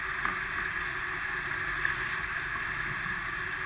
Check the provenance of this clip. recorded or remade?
recorded